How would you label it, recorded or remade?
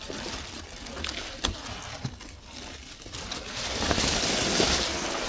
recorded